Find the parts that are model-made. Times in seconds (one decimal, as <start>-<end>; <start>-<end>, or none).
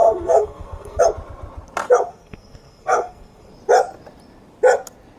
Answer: 0.0-1.0; 2.1-3.5